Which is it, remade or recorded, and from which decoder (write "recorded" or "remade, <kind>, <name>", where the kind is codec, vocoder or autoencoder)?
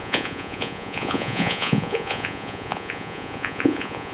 remade, vocoder, Vocos